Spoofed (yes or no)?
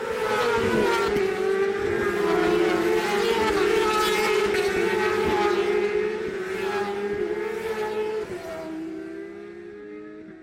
no